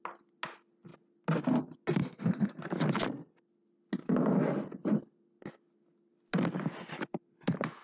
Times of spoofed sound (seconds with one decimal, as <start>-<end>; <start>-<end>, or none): 2.0-2.6